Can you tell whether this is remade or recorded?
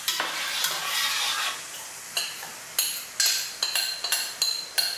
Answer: recorded